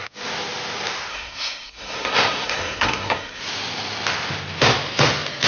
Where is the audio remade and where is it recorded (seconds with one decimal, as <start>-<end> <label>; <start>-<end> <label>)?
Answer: 0.0-1.1 recorded; 1.1-3.4 remade; 3.4-5.5 recorded